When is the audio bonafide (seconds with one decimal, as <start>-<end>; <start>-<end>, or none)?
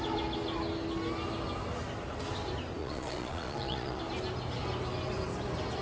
0.0-2.8; 4.0-5.8